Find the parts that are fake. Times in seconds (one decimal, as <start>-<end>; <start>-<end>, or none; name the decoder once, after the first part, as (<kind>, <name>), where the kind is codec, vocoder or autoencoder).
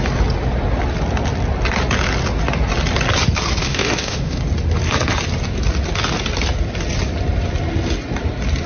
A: 3.6-4.4 (autoencoder, DAC-VAE)